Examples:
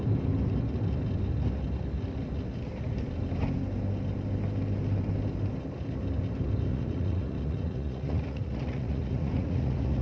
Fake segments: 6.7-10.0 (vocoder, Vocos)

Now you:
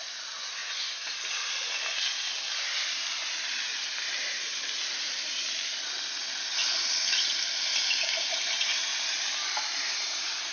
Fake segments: 0.6-1.1 (vocoder, Vocos)

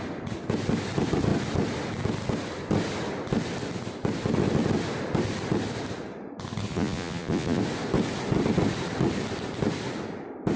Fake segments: 6.7-7.6 (vocoder, Vocos)

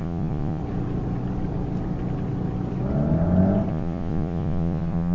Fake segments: 0.0-0.6 (vocoder, Vocos); 3.7-5.1

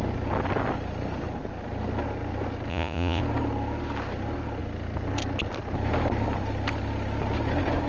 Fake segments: 2.7-3.2 (vocoder, Vocos)